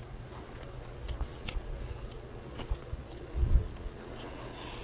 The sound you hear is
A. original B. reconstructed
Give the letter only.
B